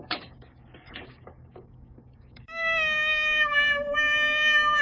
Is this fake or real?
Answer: fake